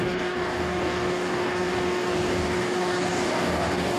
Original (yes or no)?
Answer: no